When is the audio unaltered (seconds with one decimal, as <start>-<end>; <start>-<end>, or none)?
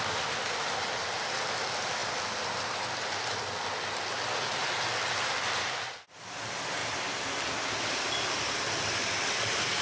0.0-9.8